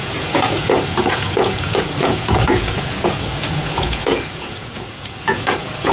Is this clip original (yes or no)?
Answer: no